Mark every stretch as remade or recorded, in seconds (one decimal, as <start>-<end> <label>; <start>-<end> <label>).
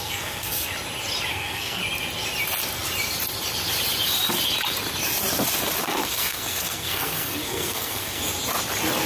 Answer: 0.0-0.7 remade; 0.7-1.3 recorded; 1.3-1.8 remade; 1.8-5.8 recorded; 5.8-8.2 remade; 8.2-9.1 recorded